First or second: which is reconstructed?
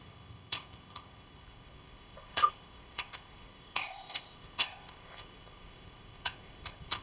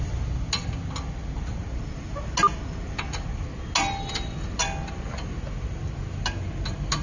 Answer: first